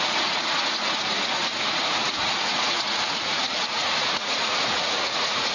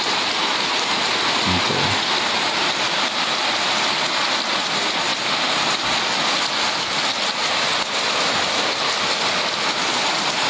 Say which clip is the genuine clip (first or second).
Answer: second